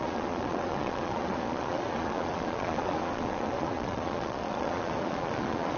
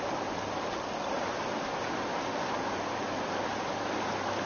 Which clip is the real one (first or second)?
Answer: second